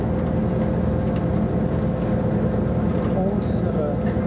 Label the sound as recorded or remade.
recorded